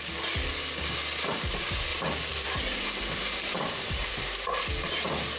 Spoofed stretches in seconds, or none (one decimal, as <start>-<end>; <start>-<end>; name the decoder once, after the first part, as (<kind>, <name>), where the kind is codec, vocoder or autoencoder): 1.9-4.6 (vocoder, BigVGAN v2)